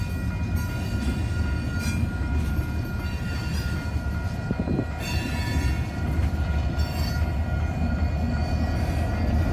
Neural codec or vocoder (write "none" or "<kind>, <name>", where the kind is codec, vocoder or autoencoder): none